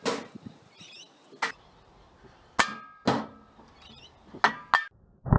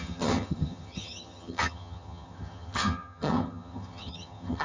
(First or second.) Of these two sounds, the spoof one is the second